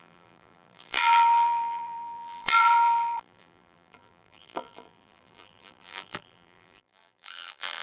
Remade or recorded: remade